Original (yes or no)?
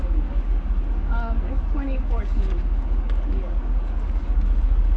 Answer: no